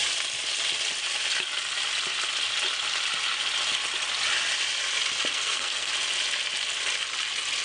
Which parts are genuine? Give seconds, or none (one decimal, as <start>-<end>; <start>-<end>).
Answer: 0.0-5.3; 5.9-7.6